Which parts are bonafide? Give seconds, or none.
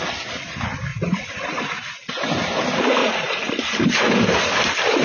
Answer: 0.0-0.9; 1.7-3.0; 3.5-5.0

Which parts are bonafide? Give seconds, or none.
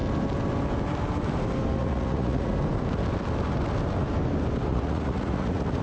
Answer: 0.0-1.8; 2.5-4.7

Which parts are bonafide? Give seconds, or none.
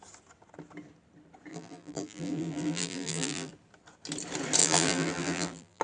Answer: 0.0-1.5; 3.5-4.6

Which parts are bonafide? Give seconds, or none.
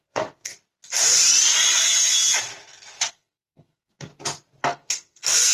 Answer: 0.5-3.1; 4.1-4.6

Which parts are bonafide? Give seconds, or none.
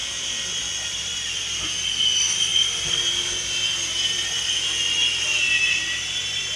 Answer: 1.4-2.5; 3.0-6.6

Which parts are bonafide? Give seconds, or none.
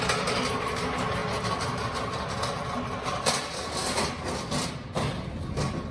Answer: 0.0-5.9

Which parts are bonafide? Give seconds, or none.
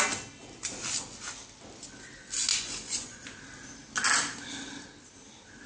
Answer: 0.0-2.5; 3.2-5.7